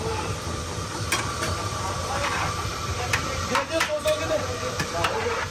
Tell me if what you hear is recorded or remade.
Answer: remade